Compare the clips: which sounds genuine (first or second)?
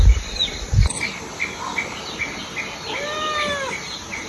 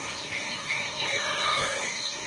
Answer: first